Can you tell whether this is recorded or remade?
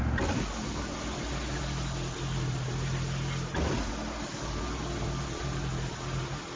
recorded